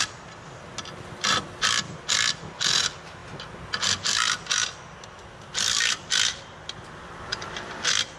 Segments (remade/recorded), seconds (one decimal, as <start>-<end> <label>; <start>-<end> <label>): 0.0-8.2 recorded